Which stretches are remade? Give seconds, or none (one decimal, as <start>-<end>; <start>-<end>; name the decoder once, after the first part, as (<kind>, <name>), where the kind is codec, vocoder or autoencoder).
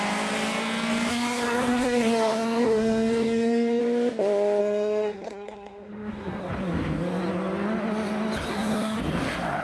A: 1.1-3.8 (codec, SNAC); 4.6-6.4; 8.5-9.0